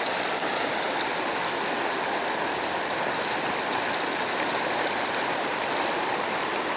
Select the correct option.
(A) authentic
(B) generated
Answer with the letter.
A